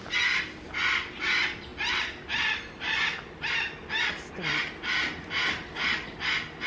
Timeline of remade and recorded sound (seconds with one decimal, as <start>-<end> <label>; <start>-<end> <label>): 0.0-6.7 recorded